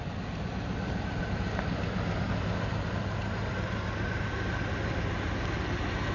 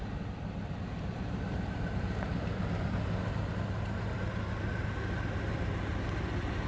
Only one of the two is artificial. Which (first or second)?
second